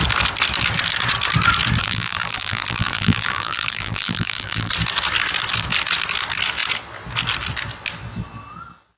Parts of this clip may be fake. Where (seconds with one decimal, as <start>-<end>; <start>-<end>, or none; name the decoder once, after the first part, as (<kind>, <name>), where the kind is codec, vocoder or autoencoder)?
1.8-4.7 (vocoder, BigVGAN v2)